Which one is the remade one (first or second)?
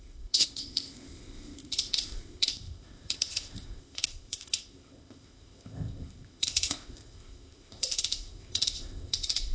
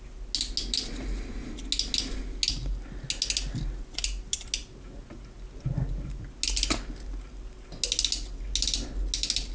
first